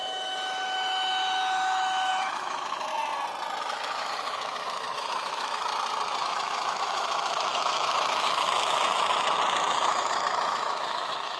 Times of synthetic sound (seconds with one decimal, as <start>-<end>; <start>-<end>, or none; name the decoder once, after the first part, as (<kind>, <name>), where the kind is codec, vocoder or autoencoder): 0.0-2.9 (autoencoder, DAC-VAE); 3.6-5.7; 6.2-11.4